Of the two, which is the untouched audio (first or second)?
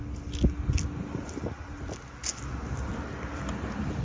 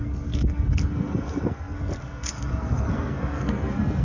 first